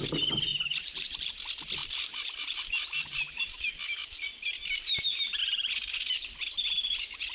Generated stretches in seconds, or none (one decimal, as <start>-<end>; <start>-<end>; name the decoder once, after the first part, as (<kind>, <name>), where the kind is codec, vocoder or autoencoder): 0.5-1.3 (vocoder, BigVGAN v2); 1.8-5.4